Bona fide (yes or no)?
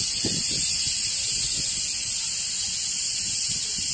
yes